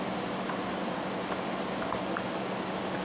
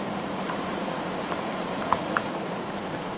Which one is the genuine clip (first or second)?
first